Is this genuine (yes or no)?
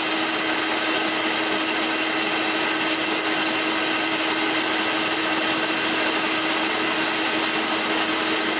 yes